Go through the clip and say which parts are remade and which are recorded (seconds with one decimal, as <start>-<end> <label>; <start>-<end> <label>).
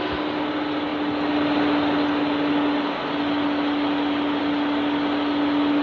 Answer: 0.0-5.8 recorded